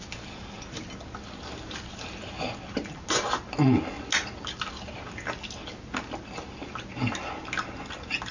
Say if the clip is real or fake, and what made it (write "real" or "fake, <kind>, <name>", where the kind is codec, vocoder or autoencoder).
real